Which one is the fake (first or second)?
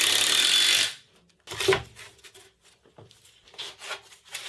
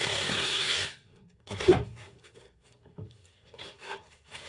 second